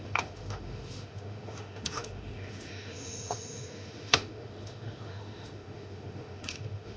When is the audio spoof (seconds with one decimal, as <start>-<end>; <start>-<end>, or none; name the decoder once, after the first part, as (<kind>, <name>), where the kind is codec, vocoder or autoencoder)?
0.0-7.0 (autoencoder, DAC-VAE)